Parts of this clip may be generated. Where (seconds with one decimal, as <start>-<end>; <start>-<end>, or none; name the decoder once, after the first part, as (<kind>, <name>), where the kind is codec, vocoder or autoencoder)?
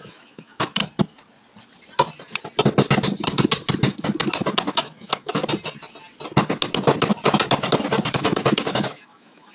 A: 0.0-0.8 (autoencoder, DAC-VAE); 4.7-5.4; 8.1-9.5